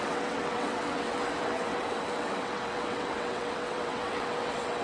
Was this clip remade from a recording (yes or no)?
yes